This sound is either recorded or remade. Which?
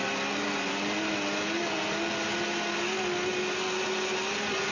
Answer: recorded